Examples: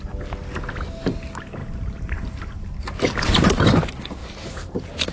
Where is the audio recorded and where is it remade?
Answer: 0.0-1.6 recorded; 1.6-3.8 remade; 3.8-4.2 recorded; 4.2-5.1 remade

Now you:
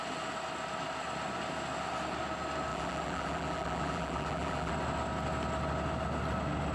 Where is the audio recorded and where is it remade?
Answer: 0.0-2.7 recorded; 2.7-4.7 remade; 4.7-6.7 recorded